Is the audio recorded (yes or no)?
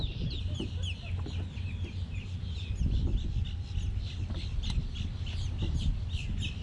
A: yes